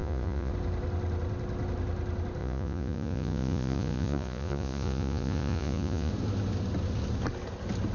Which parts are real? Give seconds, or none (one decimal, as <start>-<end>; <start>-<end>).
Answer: 0.5-2.4; 6.1-7.9